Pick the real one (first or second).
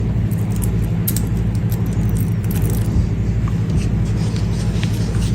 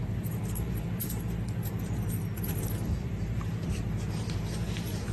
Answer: first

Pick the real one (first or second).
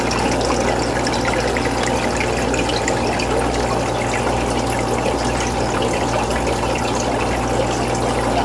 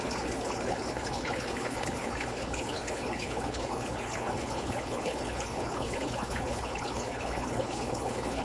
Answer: first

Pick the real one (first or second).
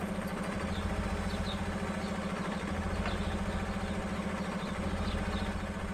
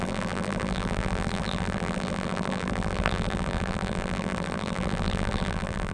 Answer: first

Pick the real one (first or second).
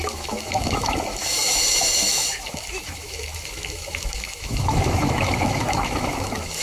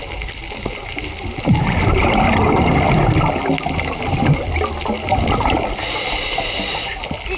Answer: second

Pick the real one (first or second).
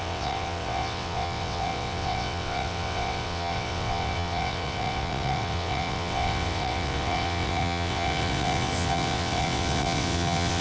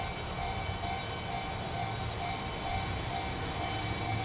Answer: second